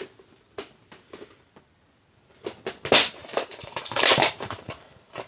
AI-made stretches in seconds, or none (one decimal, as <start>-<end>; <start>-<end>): 3.2-4.7